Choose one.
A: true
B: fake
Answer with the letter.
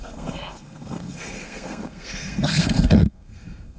B